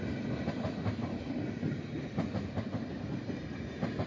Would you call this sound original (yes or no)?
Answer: yes